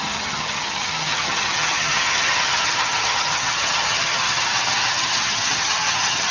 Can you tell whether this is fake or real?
fake